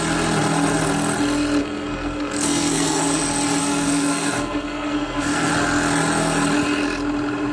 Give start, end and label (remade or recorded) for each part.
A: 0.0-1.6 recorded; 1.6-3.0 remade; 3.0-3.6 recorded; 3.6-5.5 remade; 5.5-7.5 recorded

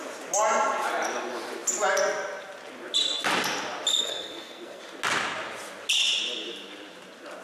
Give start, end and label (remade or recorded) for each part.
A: 0.0-3.9 recorded; 3.9-4.8 remade; 4.8-7.4 recorded

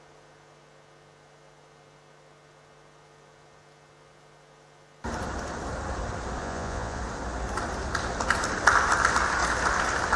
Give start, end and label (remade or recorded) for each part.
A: 0.0-6.4 recorded; 6.4-7.0 remade; 7.0-10.2 recorded

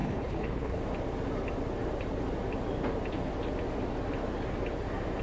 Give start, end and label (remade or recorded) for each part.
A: 0.0-0.8 remade; 0.8-5.2 recorded

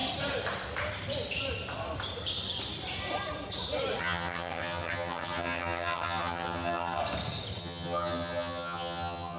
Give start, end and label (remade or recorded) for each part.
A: 0.0-4.0 recorded; 4.0-7.0 remade; 7.0-7.6 recorded; 7.6-9.4 remade

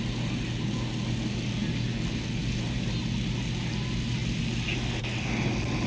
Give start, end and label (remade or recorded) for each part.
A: 0.0-5.9 recorded